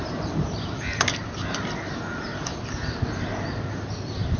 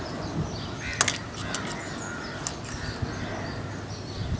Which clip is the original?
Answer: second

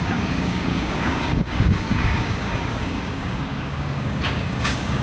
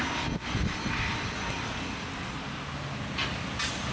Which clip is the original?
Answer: second